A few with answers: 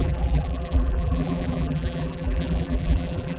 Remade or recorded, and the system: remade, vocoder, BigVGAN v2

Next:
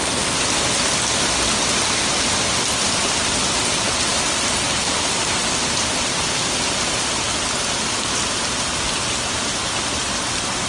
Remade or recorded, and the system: recorded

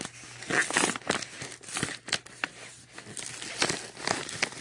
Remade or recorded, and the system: recorded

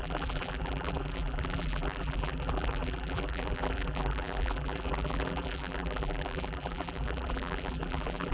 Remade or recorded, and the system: remade, vocoder, BigVGAN v2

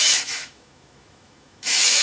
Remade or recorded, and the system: remade, autoencoder, DAC-VAE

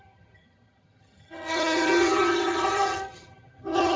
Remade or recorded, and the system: remade, vocoder, HiFi-GAN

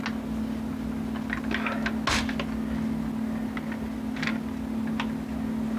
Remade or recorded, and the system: recorded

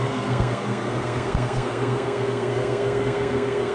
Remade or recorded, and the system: remade, codec, SNAC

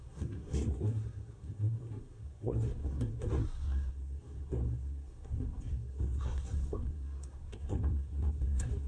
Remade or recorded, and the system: remade, codec, SNAC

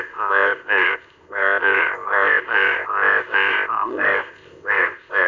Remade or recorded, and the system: remade, codec, ZipCodec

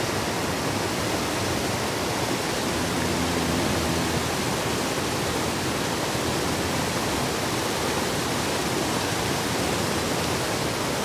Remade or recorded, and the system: recorded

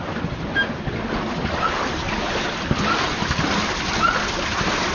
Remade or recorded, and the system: recorded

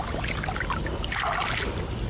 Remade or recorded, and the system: recorded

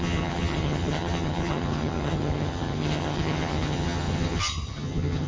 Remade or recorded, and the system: remade, vocoder, HiFi-GAN